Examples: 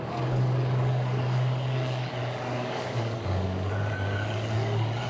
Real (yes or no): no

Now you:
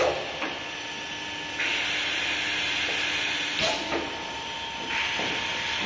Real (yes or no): yes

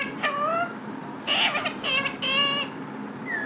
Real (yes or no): yes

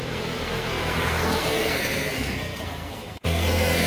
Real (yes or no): no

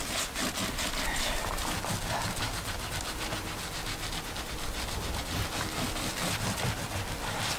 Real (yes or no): yes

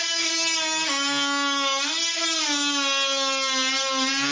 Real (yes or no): yes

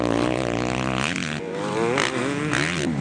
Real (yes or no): yes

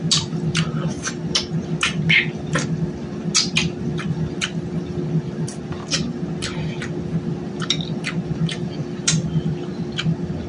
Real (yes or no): yes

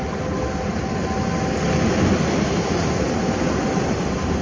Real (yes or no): yes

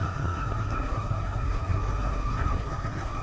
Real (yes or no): no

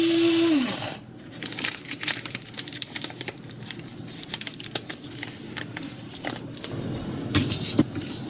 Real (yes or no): no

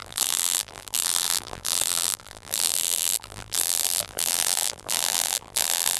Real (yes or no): no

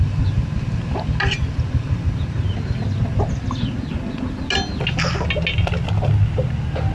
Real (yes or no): yes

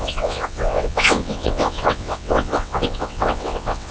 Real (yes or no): no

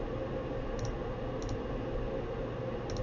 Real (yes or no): yes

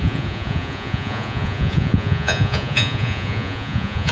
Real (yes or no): no